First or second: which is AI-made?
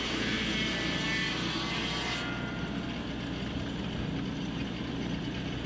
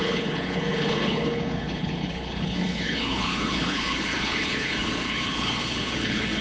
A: second